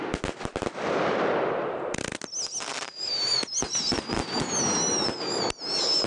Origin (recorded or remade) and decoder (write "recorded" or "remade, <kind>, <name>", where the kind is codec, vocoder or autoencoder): recorded